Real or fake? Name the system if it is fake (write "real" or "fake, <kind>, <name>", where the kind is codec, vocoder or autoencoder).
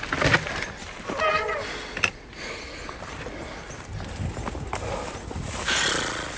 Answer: real